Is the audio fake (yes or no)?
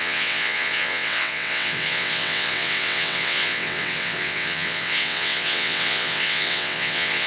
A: yes